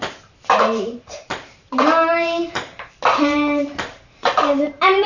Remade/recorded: remade